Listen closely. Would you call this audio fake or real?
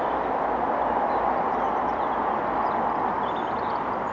real